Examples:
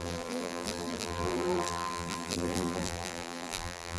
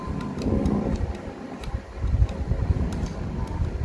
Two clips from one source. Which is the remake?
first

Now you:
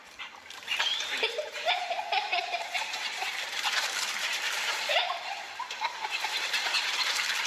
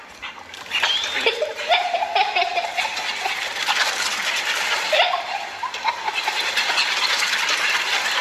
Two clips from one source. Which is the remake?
first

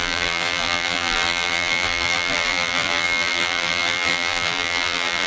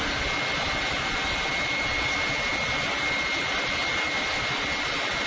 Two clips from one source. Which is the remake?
first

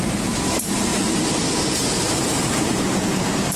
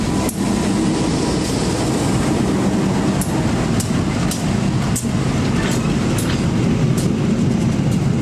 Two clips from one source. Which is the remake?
first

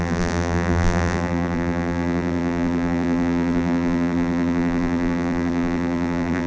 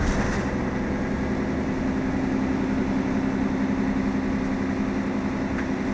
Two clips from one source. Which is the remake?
first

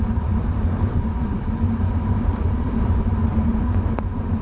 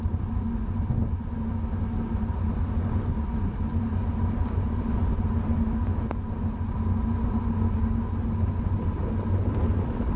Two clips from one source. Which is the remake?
first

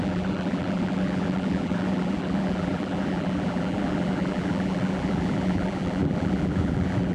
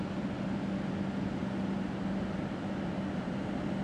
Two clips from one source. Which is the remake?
first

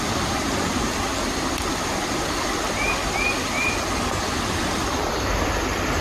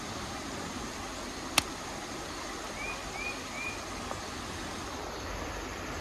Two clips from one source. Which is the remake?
first